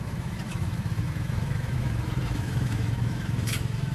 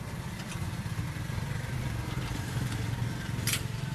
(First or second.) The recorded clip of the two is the second